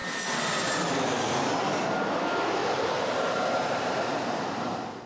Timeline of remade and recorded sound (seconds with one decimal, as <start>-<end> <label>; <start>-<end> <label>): 0.0-2.6 recorded; 2.6-4.4 remade; 4.4-5.1 recorded